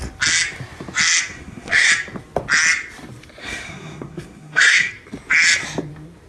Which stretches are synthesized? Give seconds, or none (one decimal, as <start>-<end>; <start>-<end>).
1.3-1.9; 3.4-4.9